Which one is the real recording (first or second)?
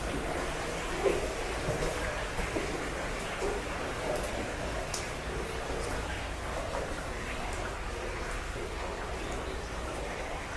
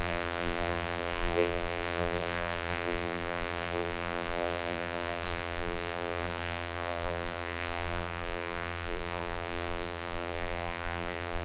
first